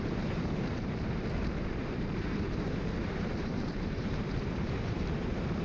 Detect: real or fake fake